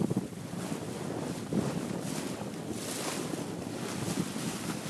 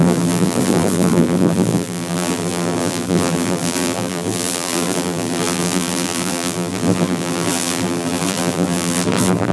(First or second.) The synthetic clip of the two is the second